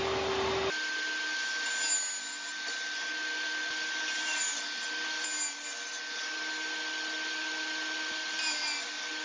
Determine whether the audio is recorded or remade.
recorded